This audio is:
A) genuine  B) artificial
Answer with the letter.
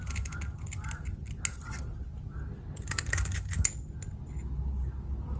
A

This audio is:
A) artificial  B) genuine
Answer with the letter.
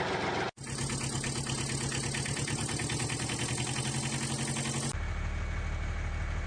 B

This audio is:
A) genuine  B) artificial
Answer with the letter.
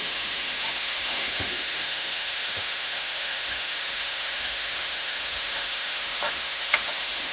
B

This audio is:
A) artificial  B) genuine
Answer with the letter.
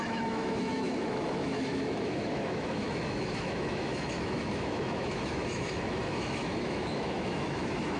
A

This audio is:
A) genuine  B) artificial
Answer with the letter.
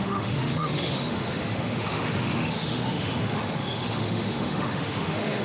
B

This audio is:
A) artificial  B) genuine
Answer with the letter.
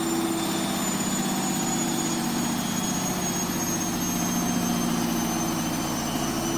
B